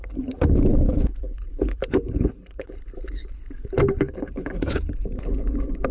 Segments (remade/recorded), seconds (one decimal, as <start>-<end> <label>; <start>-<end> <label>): 0.0-5.9 remade